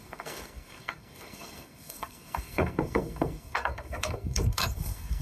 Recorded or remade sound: remade